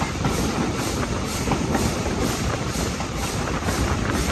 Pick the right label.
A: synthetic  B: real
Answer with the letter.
A